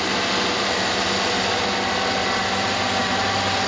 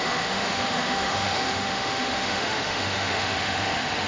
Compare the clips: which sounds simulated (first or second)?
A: second